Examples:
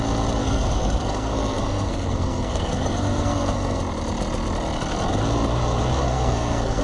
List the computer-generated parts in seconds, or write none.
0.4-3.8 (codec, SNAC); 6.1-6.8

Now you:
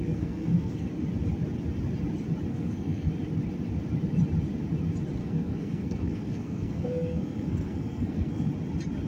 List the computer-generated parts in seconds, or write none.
0.0-0.9 (codec, SNAC); 2.5-3.1; 5.2-8.5

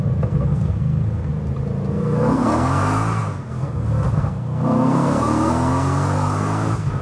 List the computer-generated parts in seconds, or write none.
0.0-1.3 (codec, SNAC); 1.9-7.0

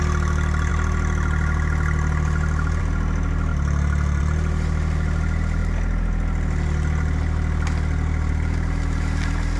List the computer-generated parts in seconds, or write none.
none

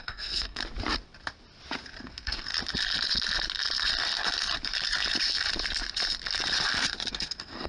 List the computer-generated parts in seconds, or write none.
0.0-0.6 (codec, SNAC); 2.0-2.5; 7.1-7.7

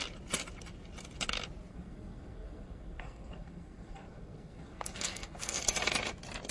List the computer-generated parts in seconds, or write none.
1.7-5.6 (codec, SNAC)

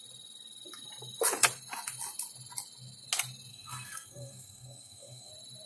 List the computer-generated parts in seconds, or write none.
3.5-5.3 (codec, SNAC)